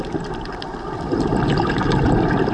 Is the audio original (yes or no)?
no